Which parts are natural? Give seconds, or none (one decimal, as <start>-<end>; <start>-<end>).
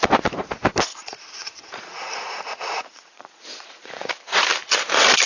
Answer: 0.0-0.9; 4.1-5.3